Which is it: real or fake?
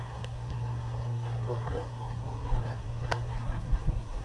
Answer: fake